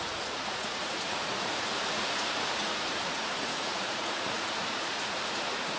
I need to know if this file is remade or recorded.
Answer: remade